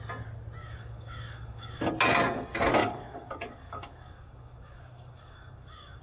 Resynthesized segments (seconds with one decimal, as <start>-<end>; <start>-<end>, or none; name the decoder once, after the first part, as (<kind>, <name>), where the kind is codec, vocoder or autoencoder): 0.6-1.9 (codec, DAC); 2.8-6.0